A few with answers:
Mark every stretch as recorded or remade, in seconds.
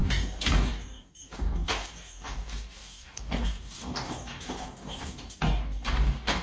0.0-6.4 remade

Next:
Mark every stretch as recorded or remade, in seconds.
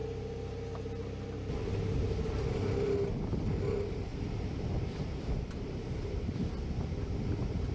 0.0-4.1 recorded; 4.1-6.6 remade; 6.6-7.7 recorded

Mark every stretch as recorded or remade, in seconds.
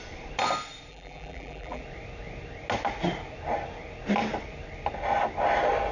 0.0-0.9 recorded; 0.9-1.8 remade; 1.8-5.9 recorded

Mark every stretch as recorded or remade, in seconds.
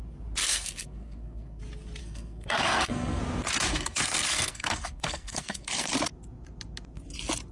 0.0-0.4 recorded; 0.4-1.6 remade; 1.6-2.0 recorded; 2.0-3.2 remade; 3.2-3.7 recorded; 3.7-5.9 remade; 5.9-7.5 recorded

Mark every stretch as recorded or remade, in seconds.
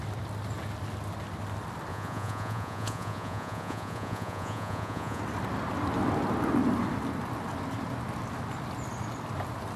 0.0-1.9 recorded; 1.9-5.2 remade; 5.2-9.8 recorded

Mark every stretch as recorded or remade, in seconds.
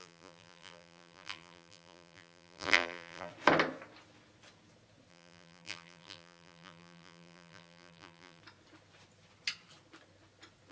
0.0-3.3 remade; 3.3-5.1 recorded; 5.1-8.4 remade; 8.4-10.7 recorded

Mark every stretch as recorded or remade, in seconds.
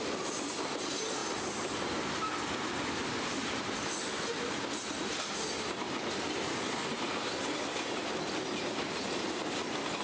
0.0-10.0 recorded